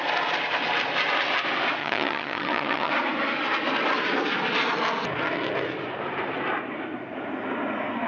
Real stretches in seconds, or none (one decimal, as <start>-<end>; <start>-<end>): 0.0-1.8; 2.9-8.1